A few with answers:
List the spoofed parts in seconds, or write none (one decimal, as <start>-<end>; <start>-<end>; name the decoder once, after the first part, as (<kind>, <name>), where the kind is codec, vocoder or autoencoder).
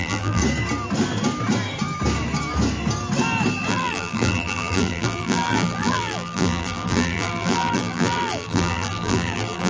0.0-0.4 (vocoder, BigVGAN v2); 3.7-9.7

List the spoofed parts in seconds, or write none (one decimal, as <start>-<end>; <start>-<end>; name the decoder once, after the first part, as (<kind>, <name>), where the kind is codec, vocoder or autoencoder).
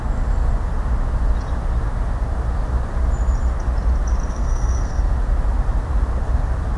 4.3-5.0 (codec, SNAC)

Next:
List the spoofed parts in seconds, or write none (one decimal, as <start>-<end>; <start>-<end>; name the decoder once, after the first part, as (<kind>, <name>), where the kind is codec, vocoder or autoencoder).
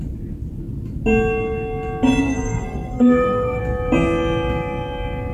2.2-3.6 (codec, SNAC)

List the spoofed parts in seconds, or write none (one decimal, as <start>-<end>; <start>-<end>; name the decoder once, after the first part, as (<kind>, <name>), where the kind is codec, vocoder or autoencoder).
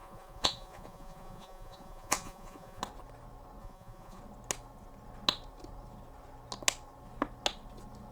0.0-2.8 (vocoder, Vocos); 3.6-4.2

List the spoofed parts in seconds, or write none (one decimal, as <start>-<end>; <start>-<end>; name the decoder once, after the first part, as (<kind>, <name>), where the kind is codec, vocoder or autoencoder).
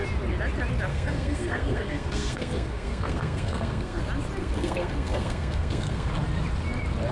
0.9-4.0 (codec, SNAC); 4.4-6.1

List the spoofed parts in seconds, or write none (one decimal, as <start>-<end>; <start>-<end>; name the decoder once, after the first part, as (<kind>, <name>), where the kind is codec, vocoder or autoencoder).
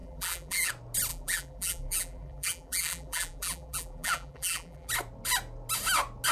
0.0-0.7 (vocoder, BigVGAN v2); 1.1-4.9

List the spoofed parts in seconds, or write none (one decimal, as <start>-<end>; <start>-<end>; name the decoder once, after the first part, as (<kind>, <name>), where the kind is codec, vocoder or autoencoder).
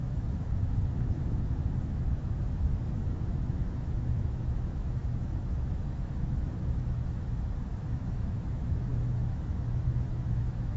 0.0-10.8 (autoencoder, DAC-VAE)